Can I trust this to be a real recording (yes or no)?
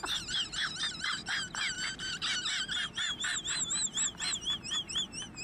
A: yes